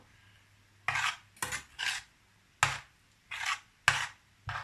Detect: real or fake real